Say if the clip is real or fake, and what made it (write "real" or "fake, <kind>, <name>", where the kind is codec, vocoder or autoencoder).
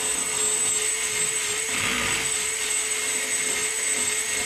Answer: real